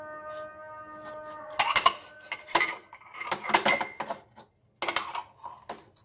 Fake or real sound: real